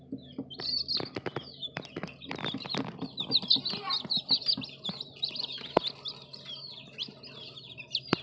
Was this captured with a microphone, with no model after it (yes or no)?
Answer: yes